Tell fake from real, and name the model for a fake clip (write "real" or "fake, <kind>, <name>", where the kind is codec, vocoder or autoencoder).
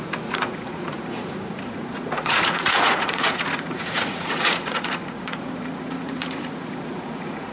fake, vocoder, Vocos